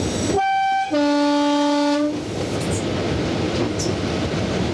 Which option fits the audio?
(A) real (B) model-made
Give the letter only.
A